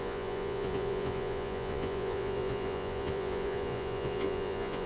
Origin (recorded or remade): remade